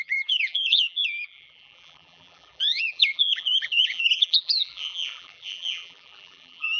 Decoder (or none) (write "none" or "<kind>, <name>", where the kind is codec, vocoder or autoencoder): vocoder, BigVGAN v2